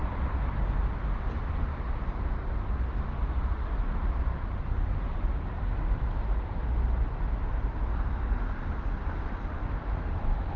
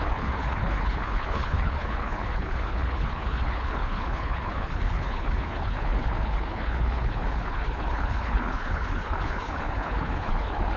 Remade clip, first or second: second